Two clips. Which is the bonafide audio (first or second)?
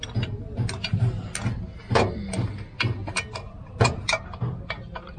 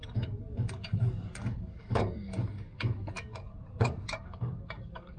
first